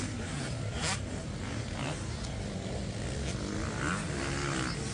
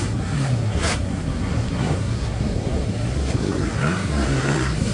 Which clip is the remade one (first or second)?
second